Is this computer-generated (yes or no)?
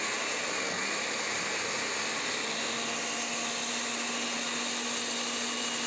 no